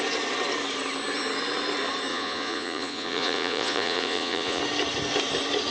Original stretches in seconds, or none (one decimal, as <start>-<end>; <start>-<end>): 0.0-2.1; 4.6-5.7